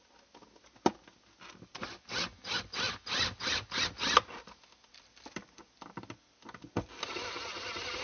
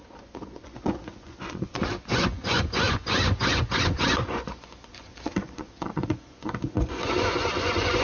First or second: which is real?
first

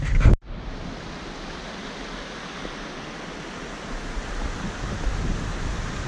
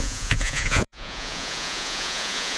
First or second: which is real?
first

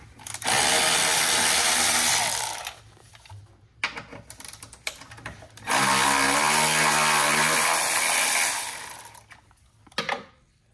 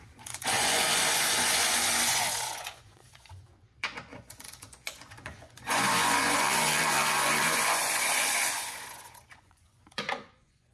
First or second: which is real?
first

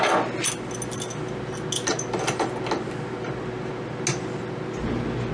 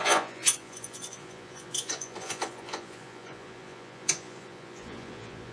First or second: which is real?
first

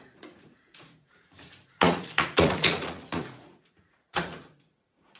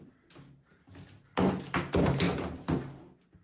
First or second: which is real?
second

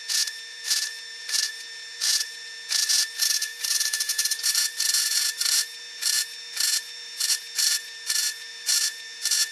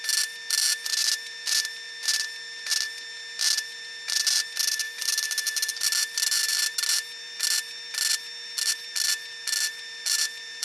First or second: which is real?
second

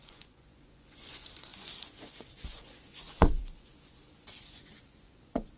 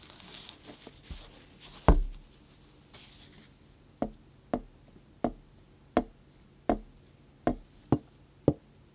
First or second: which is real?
second